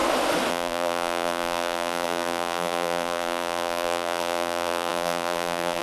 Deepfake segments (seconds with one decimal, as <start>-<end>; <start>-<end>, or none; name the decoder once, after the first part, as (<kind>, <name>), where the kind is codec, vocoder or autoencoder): 0.5-5.8 (vocoder, BigVGAN v2)